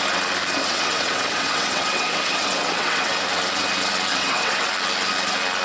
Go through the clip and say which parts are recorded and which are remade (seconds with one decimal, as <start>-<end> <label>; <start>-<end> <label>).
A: 0.0-0.6 recorded; 0.6-3.2 remade; 3.2-4.1 recorded; 4.1-4.7 remade; 4.7-5.6 recorded